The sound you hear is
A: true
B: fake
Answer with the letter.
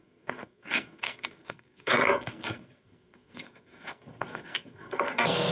B